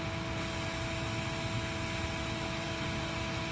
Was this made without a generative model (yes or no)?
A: yes